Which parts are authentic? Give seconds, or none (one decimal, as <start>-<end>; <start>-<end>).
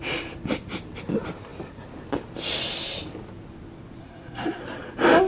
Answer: 0.0-4.0; 4.6-5.3